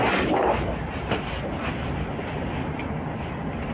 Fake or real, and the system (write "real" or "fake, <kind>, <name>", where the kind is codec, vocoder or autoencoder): real